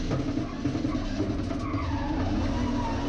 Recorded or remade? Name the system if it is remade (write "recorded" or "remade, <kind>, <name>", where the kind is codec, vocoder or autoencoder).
recorded